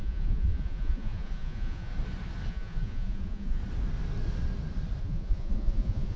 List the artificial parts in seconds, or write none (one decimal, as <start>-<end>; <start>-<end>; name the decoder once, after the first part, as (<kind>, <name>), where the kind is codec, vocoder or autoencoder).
0.0-1.9 (vocoder, Vocos); 2.5-3.6; 5.0-6.2